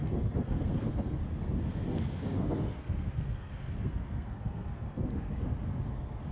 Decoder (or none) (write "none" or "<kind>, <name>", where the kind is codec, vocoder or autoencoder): codec, SNAC